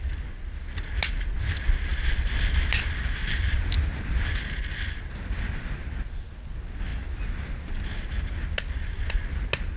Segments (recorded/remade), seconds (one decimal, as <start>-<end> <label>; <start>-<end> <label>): 0.0-9.8 recorded